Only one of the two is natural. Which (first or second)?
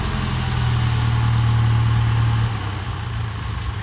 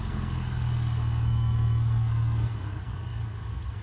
first